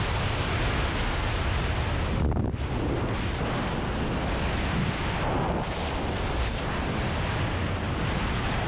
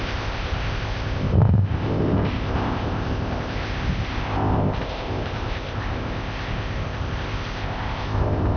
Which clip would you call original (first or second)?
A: first